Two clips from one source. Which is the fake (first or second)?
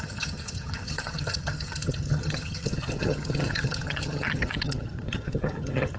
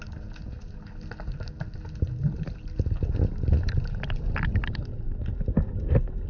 first